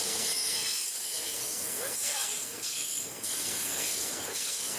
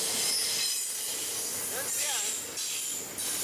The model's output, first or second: first